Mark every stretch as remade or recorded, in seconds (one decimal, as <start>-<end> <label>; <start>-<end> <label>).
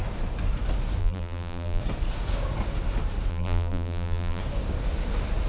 0.0-1.0 recorded; 1.0-1.8 remade; 1.8-3.3 recorded; 3.3-4.4 remade; 4.4-5.5 recorded